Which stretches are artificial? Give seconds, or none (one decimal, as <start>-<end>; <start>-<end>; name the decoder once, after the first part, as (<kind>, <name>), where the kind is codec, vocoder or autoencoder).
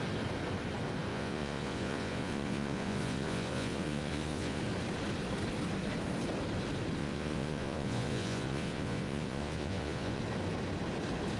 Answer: 1.1-4.6 (vocoder, Vocos); 7.0-10.2